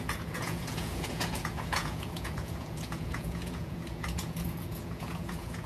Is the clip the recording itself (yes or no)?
no